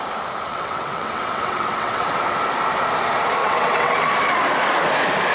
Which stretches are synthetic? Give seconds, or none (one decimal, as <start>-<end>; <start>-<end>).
0.5-2.2; 3.4-4.1